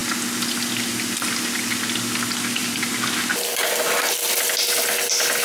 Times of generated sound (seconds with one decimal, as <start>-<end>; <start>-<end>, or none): none